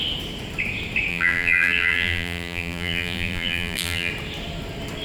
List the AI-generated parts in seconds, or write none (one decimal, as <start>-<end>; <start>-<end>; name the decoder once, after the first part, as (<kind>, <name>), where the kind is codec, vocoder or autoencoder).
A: 1.1-4.1 (vocoder, BigVGAN v2)